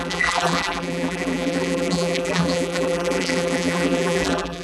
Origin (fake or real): fake